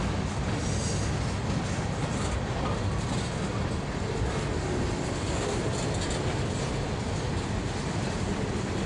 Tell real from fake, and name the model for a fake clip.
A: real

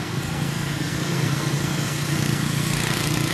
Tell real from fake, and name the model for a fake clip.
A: fake, codec, SNAC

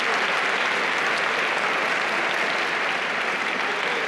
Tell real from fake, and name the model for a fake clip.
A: real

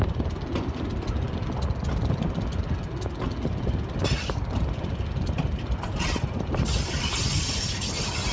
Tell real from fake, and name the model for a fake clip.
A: real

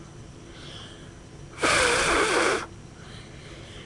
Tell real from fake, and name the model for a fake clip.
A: real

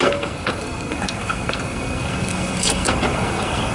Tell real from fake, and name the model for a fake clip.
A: fake, codec, SNAC